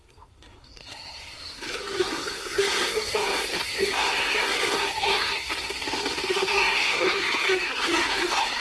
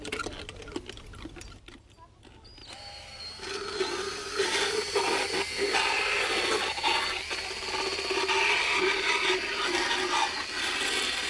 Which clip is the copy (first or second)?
first